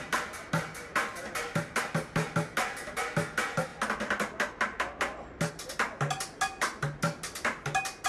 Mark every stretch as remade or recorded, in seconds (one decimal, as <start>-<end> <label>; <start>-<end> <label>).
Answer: 0.0-8.1 recorded

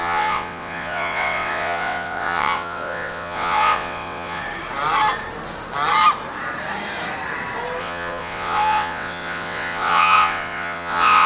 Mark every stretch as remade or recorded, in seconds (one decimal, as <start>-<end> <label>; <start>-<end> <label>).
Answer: 0.0-4.4 remade; 4.4-7.8 recorded; 7.8-11.3 remade